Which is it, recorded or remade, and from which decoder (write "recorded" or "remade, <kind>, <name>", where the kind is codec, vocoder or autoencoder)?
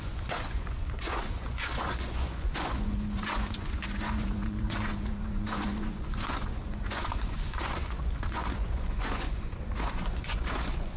remade, vocoder, Vocos